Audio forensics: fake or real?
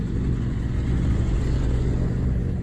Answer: fake